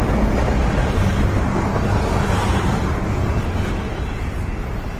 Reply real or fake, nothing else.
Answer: real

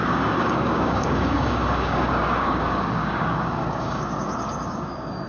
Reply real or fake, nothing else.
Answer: fake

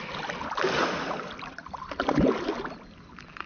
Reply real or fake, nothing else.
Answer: real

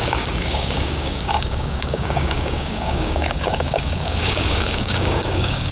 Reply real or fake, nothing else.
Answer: fake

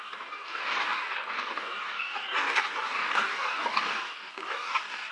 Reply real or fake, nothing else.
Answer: fake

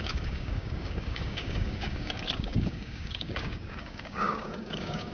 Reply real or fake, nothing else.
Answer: fake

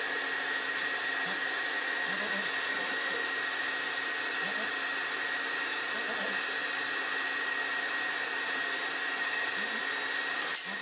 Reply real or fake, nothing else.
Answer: real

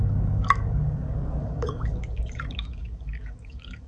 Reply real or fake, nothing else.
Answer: fake